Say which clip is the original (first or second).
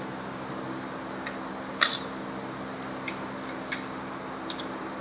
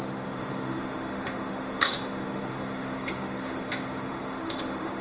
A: first